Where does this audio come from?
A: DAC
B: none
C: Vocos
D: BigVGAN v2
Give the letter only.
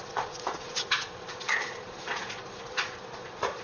C